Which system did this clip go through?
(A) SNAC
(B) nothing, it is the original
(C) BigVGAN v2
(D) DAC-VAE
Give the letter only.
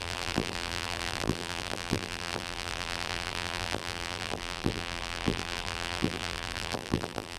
C